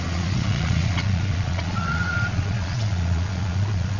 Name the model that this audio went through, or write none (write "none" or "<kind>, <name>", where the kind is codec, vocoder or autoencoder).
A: vocoder, Vocos